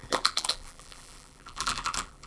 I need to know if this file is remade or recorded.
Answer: remade